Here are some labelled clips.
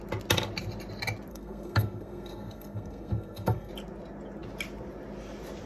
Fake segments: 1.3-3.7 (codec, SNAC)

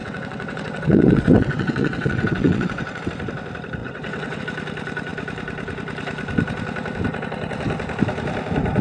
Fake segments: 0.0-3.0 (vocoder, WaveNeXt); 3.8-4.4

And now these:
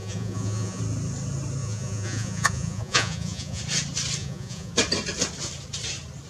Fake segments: 0.0-0.8 (vocoder, Vocos); 1.6-3.6; 4.2-4.7